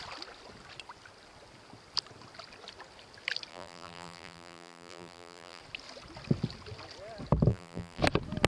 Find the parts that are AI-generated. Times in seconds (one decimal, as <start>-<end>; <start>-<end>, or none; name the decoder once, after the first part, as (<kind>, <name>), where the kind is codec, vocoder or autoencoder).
3.5-5.6 (vocoder, BigVGAN v2); 7.5-8.0